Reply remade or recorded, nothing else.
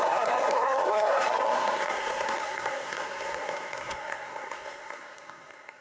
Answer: remade